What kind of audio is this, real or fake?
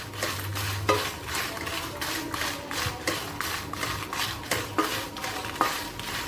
real